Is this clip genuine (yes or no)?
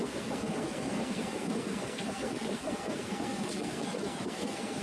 no